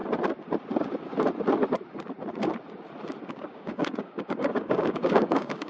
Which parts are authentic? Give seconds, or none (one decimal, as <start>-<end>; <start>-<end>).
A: 0.0-3.2